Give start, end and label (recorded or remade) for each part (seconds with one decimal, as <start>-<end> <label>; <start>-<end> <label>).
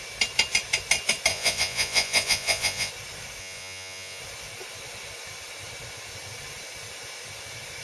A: 0.0-1.3 recorded; 1.3-2.9 remade; 2.9-3.4 recorded; 3.4-4.2 remade; 4.2-7.8 recorded